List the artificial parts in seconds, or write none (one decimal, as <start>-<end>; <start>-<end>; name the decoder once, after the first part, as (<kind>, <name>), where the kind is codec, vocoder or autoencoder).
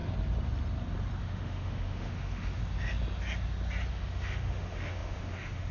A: 1.2-2.6 (autoencoder, DAC-VAE); 3.9-5.7